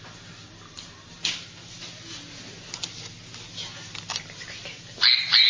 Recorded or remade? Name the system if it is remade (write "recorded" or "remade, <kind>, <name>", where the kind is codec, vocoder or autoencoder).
recorded